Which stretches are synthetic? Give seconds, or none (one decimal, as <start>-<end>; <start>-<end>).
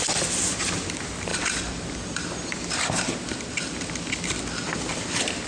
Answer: 1.3-4.4; 4.9-5.5